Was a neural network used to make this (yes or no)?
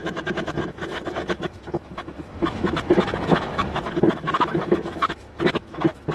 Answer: yes